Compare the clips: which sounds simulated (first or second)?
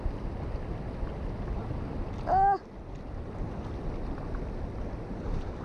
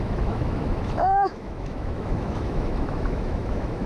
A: second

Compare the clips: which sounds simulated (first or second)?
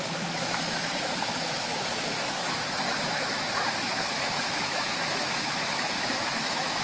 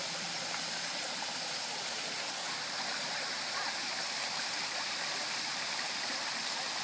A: first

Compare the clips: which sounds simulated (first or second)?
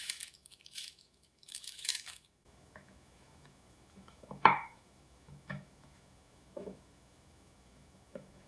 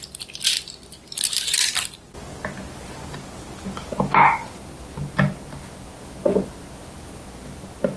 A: first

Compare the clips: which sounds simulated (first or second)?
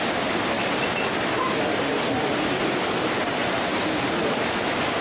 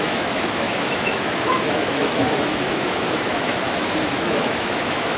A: second